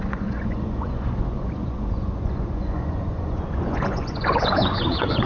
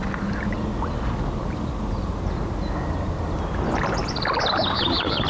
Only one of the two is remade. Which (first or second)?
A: first